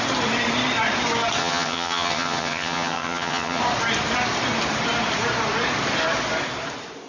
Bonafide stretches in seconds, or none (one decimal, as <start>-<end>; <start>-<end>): 0.0-1.4; 3.6-7.1